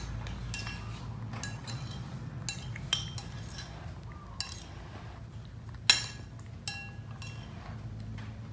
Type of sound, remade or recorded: recorded